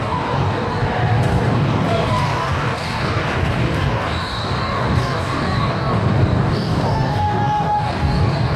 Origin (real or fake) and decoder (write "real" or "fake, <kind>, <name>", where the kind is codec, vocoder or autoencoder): fake, codec, DAC